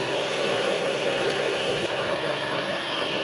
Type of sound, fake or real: fake